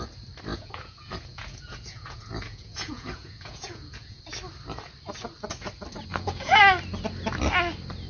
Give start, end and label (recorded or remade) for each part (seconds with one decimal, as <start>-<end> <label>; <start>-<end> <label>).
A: 0.0-0.5 recorded; 0.5-4.2 remade; 4.2-6.1 recorded; 6.1-6.6 remade; 6.6-8.1 recorded